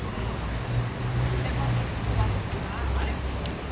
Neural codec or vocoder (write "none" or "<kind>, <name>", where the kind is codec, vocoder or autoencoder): none